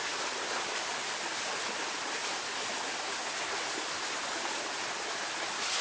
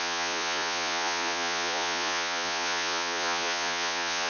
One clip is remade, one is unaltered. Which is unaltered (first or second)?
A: first